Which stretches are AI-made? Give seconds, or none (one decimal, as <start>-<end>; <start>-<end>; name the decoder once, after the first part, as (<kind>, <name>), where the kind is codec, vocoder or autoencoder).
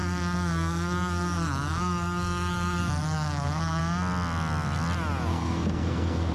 0.0-3.8 (codec, SNAC); 5.3-6.3